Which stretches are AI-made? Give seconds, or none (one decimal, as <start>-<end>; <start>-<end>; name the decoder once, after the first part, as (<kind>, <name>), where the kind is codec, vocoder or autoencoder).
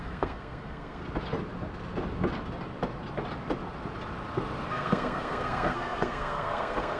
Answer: 0.0-1.0 (codec, SNAC); 4.7-7.0